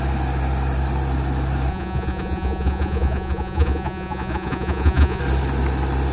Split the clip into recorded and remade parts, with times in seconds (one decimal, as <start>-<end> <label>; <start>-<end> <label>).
0.0-1.7 recorded; 1.7-5.2 remade; 5.2-6.1 recorded